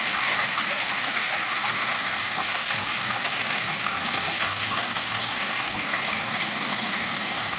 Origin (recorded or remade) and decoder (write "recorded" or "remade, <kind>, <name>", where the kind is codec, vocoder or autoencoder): remade, codec, DAC